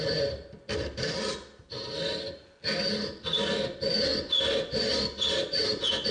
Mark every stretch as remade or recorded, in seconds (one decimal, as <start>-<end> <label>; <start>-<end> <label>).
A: 0.0-6.1 recorded